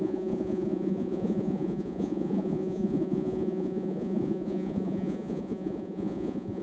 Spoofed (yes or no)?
yes